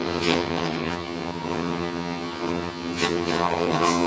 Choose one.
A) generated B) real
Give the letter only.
A